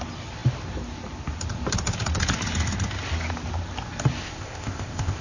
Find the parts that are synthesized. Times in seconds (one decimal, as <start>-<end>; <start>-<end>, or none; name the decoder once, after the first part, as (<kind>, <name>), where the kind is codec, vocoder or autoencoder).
4.2-5.2 (codec, ZipCodec)